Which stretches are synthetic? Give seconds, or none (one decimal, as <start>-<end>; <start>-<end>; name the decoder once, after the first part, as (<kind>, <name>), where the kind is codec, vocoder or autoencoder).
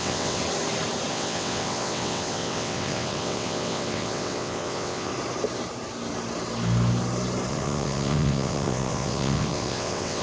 0.0-0.4 (vocoder, WaveNeXt); 1.1-5.1; 7.5-10.2